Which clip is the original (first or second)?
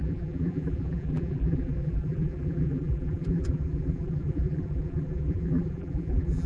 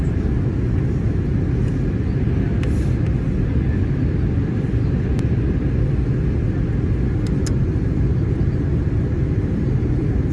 second